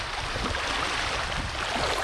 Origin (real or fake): real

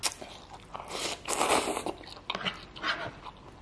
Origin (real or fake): real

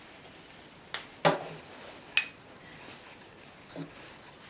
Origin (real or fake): real